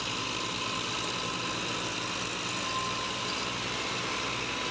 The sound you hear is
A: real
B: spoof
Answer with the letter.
A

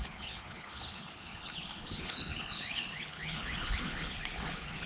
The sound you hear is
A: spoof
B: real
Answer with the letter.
A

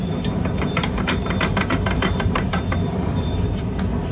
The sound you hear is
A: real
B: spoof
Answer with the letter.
B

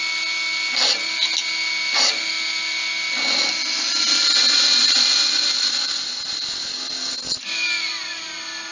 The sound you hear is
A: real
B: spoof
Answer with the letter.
A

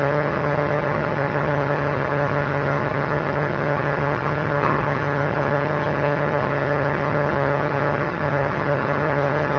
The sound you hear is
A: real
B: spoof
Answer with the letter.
B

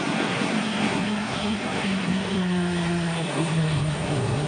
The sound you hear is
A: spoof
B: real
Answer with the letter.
A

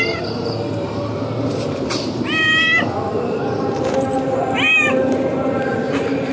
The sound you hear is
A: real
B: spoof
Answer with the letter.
B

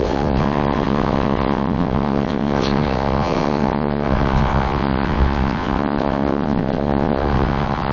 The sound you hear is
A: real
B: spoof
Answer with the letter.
B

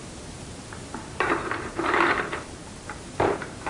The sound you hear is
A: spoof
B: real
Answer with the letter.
A